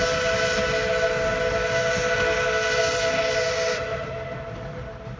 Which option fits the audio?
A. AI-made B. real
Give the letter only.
B